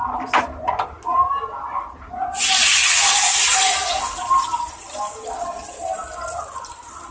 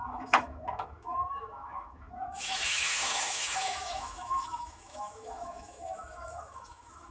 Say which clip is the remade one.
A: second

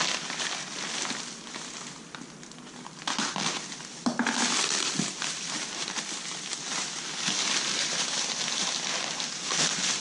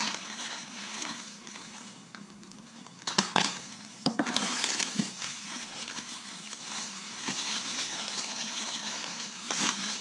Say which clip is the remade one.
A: second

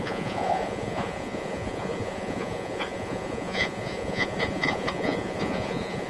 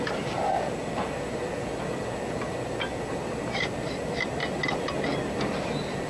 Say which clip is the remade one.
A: first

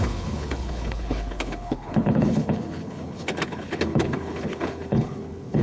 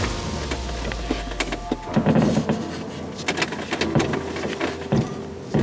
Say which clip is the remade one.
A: first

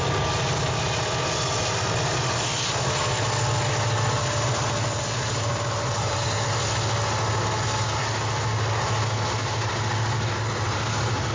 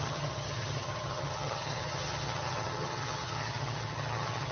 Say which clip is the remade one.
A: second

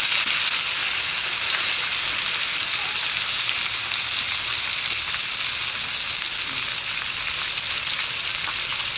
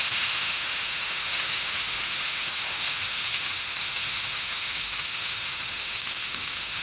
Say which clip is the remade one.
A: second